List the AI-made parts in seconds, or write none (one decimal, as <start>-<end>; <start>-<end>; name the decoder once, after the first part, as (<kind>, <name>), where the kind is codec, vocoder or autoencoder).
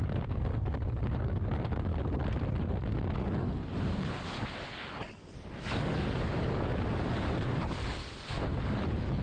0.0-1.9 (codec, DAC); 5.5-8.0; 8.5-9.2